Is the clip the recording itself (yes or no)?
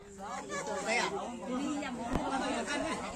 yes